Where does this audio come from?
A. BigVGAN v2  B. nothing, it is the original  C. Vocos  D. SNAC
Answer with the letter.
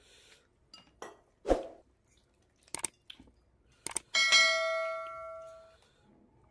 B